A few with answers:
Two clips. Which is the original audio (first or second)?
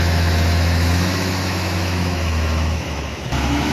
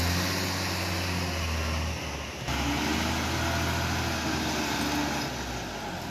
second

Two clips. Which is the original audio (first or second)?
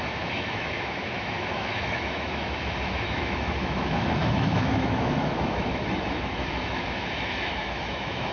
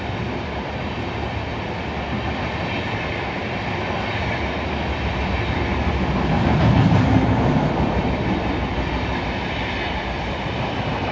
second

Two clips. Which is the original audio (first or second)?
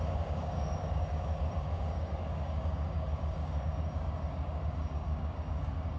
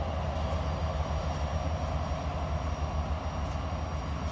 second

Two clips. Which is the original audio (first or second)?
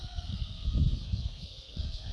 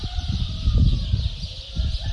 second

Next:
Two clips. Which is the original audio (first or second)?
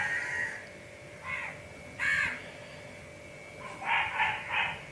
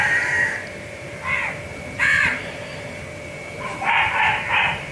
first